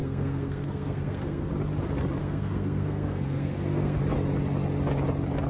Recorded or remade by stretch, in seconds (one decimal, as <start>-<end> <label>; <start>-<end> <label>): 0.0-1.5 remade; 1.5-2.2 recorded; 2.2-4.0 remade; 4.0-5.5 recorded